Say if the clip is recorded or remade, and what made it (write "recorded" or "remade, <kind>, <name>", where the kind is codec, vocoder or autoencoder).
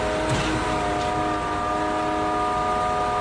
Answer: recorded